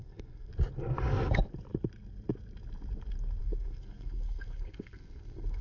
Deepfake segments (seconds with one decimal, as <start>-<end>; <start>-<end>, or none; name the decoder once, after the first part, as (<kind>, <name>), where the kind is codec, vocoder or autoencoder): 0.0-0.5 (codec, SNAC); 3.4-5.6